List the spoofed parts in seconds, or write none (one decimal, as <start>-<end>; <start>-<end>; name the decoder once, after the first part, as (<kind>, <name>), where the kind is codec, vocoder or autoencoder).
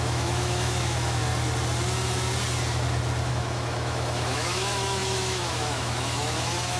0.0-1.2 (autoencoder, DAC-VAE); 3.3-6.8